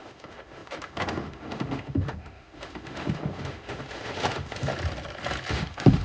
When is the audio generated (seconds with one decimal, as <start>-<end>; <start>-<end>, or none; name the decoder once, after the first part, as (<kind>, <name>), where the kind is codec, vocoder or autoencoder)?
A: 0.0-4.7 (autoencoder, DAC-VAE); 5.5-6.0